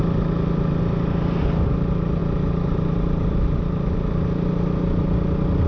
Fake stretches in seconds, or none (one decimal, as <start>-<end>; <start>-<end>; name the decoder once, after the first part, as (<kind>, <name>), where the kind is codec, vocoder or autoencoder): none